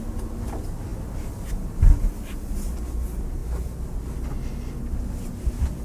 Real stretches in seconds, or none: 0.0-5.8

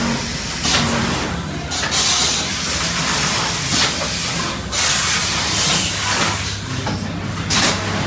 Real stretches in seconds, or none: 0.0-8.1